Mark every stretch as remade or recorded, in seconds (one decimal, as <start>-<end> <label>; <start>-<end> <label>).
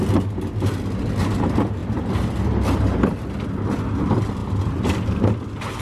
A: 0.0-1.8 recorded; 1.8-3.3 remade; 3.3-4.4 recorded; 4.4-5.8 remade